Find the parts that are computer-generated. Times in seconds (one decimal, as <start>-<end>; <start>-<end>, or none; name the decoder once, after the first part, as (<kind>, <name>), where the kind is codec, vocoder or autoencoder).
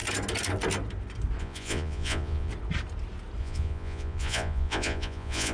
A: 1.4-2.5 (vocoder, Vocos); 3.4-5.5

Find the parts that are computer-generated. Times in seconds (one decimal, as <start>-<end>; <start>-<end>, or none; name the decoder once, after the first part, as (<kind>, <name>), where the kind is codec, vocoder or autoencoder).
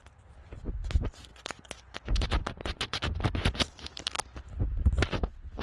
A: 1.3-3.6 (vocoder, Vocos)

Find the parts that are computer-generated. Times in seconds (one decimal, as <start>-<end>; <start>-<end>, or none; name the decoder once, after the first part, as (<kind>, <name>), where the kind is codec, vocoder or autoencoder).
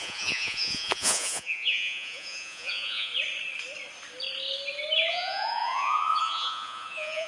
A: 0.0-3.1 (vocoder, Vocos); 5.1-7.3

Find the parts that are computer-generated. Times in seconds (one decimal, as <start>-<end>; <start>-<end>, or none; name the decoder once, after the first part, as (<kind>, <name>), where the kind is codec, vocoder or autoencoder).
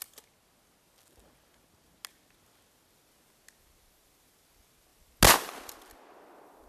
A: none